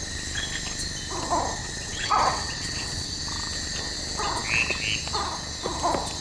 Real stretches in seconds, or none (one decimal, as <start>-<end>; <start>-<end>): 0.0-1.6; 3.2-6.2